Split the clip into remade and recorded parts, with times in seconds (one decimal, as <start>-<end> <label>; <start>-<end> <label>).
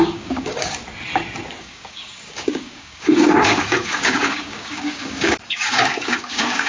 0.0-0.8 remade; 0.8-1.6 recorded; 1.6-6.7 remade